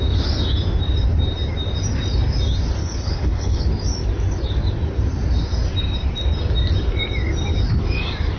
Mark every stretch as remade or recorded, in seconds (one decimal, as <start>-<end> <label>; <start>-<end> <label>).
0.0-2.8 recorded; 2.8-3.6 remade; 3.6-8.4 recorded